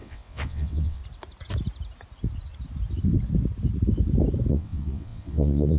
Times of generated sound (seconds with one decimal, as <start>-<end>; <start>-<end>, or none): 0.0-1.0; 4.5-5.8